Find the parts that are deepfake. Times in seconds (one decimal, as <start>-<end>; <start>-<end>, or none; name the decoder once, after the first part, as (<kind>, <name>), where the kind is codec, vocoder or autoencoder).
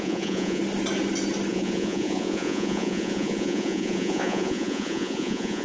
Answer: 0.0-0.6 (vocoder, Vocos); 1.5-5.6